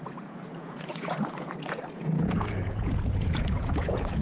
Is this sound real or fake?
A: fake